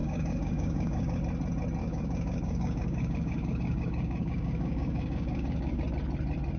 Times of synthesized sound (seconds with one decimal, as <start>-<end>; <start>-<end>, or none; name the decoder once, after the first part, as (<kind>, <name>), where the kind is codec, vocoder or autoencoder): 0.0-1.2 (codec, DAC); 1.8-5.8